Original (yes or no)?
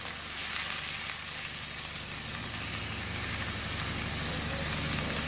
yes